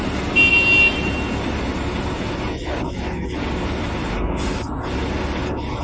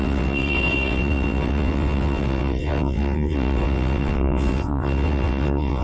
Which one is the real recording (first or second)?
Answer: first